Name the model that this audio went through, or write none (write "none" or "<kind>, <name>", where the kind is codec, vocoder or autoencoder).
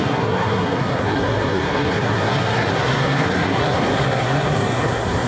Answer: codec, SNAC